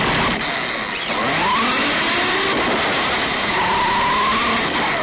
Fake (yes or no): no